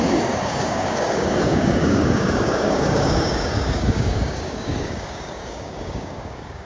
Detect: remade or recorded remade